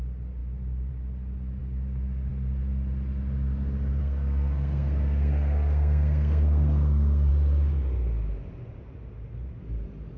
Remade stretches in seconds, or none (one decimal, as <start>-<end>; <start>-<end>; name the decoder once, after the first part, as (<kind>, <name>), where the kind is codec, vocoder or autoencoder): 4.0-7.3 (codec, SNAC)